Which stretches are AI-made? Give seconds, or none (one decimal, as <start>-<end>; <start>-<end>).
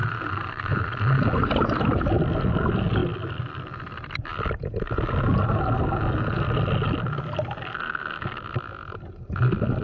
0.0-0.8